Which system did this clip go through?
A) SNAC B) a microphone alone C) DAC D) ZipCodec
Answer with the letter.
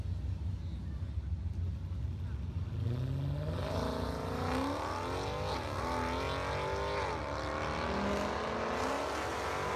B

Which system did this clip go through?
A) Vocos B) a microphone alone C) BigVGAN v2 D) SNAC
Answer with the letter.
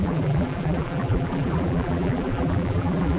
C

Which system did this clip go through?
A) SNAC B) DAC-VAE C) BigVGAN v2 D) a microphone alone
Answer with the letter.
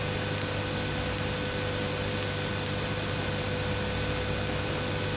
D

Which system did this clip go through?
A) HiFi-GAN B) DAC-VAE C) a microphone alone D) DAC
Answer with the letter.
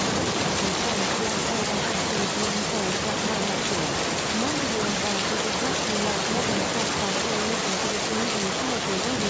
C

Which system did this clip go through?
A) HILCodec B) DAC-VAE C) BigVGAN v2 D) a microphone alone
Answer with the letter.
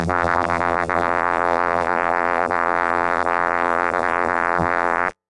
C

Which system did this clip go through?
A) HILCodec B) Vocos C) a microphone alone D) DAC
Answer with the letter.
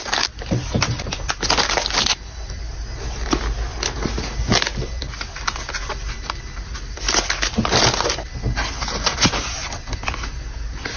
C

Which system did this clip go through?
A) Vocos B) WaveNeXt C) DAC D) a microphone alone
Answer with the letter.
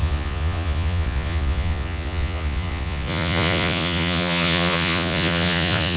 A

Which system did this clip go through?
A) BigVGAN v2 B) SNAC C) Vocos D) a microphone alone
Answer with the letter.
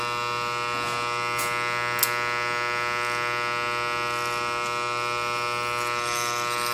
D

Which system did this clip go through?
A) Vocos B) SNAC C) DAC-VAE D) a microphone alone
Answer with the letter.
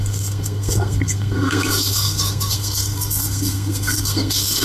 B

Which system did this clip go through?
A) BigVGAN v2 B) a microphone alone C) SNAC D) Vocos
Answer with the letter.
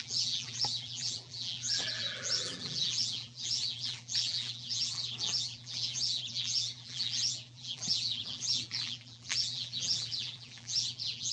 A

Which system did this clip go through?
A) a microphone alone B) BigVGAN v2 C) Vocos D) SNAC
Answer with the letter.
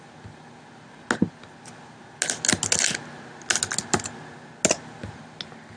A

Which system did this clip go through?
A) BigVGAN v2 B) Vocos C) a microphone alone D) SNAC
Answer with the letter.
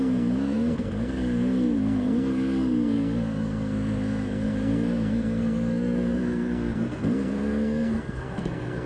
D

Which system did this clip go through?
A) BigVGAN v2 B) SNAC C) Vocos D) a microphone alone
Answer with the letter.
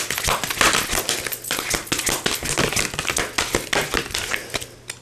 D